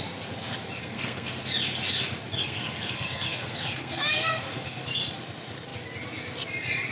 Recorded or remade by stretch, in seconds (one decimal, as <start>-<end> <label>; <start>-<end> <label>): 0.0-0.8 recorded; 0.8-1.4 remade; 1.4-2.4 recorded; 2.4-4.4 remade; 4.4-6.9 recorded